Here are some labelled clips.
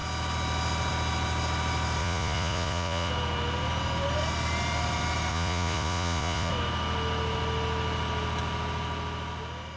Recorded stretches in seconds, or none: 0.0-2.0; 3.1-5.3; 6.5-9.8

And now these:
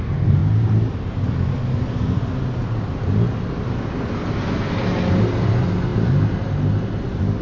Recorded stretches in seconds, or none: 0.0-7.4

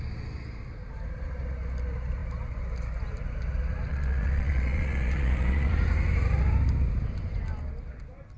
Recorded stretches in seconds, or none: 0.0-3.9; 5.7-8.4